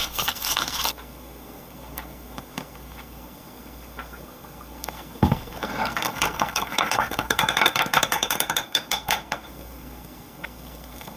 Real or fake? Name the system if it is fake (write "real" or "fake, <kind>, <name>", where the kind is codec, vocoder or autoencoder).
fake, codec, SNAC